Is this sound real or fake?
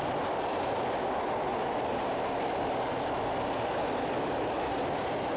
real